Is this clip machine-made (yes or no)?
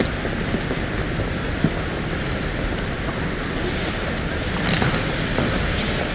no